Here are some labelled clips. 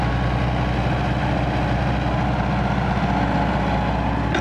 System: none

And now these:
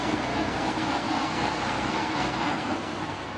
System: codec, SNAC